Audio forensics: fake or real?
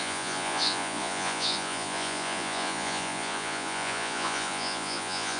fake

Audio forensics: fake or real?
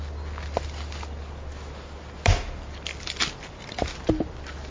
real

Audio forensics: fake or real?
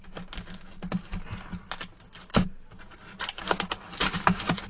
real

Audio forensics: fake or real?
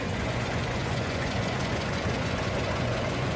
fake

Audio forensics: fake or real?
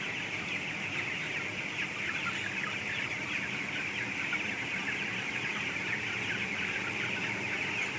real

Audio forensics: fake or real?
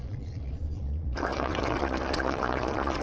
fake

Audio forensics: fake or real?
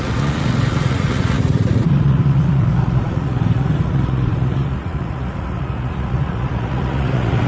fake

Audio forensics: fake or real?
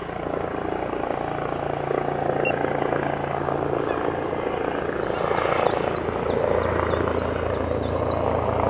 real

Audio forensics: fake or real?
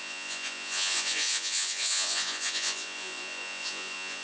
fake